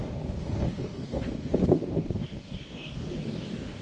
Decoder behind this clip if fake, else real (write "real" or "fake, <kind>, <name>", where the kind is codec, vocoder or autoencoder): fake, codec, DAC